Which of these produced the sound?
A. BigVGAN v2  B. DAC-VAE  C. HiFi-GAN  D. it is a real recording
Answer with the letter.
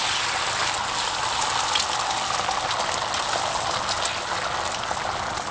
D